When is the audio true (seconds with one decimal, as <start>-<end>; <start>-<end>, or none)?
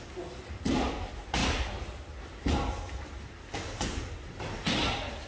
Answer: 0.0-5.3